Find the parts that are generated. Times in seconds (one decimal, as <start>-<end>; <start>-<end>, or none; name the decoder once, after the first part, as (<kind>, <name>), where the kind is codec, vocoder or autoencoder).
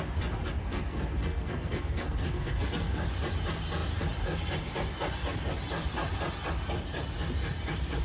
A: 0.6-3.0 (codec, SNAC)